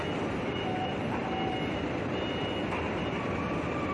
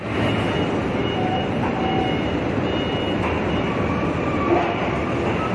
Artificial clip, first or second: first